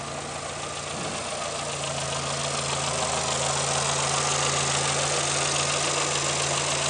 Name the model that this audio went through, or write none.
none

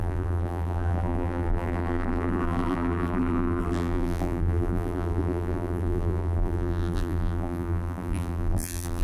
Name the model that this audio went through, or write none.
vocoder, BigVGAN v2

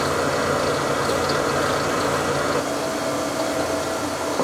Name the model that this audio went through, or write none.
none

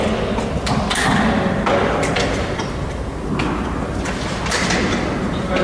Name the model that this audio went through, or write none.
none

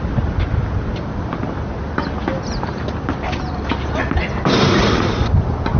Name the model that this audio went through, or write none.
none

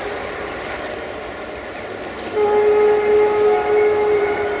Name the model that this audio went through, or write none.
none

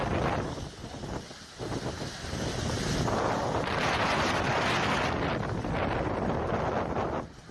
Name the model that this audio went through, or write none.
none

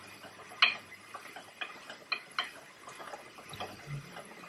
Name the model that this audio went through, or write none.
none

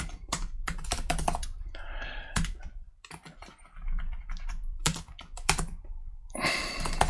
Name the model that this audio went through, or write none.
vocoder, BigVGAN v2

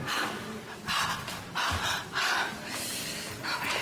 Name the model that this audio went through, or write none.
none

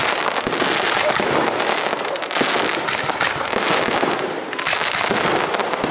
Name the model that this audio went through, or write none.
none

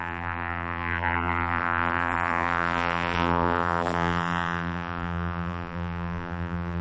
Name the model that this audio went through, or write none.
vocoder, BigVGAN v2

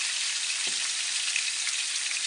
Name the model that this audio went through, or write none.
vocoder, BigVGAN v2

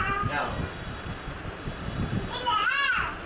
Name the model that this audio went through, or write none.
none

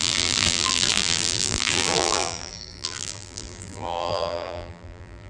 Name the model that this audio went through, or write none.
vocoder, BigVGAN v2